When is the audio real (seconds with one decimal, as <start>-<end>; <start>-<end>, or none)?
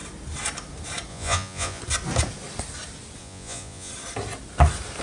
0.0-1.1; 1.8-3.2; 3.9-5.0